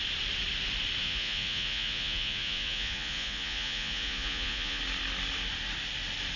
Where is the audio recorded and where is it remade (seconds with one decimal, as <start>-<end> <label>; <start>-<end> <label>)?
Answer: 0.0-1.0 recorded; 1.0-4.8 remade; 4.8-6.4 recorded